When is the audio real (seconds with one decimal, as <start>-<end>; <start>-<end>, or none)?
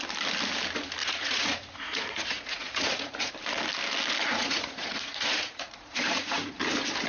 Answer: 0.0-1.0; 3.3-4.2; 6.6-7.1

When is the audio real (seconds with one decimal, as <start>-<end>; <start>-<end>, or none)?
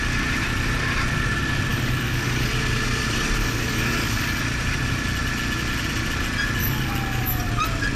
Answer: 0.0-1.7; 2.5-3.4; 4.4-6.6; 7.5-8.0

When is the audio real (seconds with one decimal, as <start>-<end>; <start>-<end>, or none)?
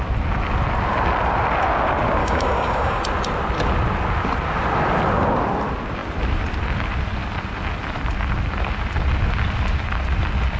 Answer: 0.0-2.2; 3.0-10.6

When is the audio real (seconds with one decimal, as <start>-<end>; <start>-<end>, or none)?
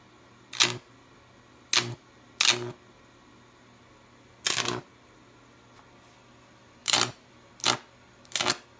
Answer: 0.0-6.8; 7.5-8.8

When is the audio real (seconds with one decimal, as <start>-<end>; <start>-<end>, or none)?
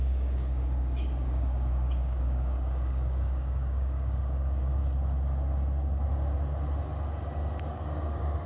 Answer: 4.8-7.7